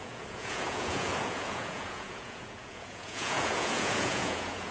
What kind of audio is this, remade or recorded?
remade